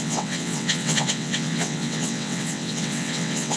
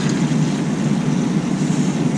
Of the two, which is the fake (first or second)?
first